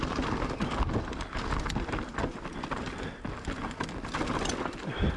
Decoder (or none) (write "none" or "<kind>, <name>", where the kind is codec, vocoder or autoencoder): none